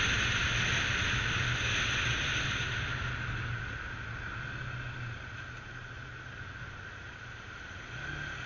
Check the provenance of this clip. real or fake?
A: real